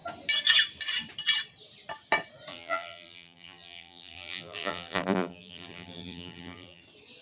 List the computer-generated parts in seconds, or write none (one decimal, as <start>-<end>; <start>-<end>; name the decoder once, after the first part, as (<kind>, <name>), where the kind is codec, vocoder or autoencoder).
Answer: 2.5-6.8 (vocoder, BigVGAN v2)